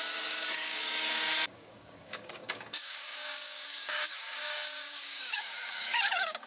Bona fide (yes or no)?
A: no